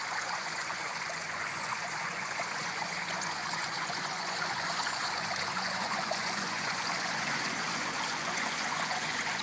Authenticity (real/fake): fake